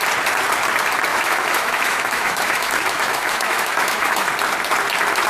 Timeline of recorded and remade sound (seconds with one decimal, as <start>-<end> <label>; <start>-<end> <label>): 0.0-1.1 recorded; 1.1-4.3 remade; 4.3-5.3 recorded